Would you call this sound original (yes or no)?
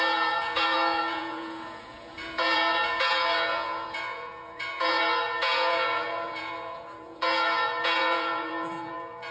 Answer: no